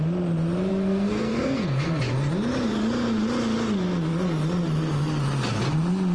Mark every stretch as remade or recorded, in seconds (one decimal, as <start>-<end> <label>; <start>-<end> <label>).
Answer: 0.0-0.7 recorded; 0.7-2.0 remade; 2.0-6.1 recorded